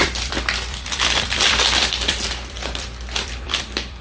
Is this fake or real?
fake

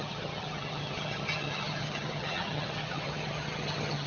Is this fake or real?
fake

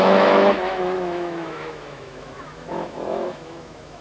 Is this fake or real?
fake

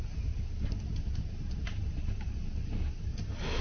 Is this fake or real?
real